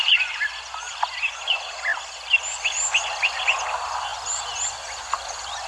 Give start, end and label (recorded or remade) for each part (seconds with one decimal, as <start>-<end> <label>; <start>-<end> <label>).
0.0-5.7 recorded